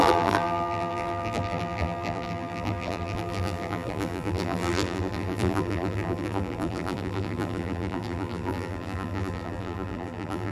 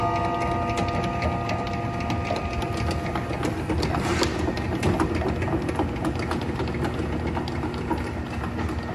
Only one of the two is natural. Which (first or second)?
second